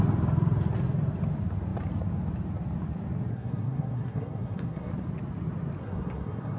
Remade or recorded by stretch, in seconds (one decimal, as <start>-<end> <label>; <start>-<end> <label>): 0.0-3.3 recorded; 3.3-4.9 remade; 4.9-5.8 recorded; 5.8-6.6 remade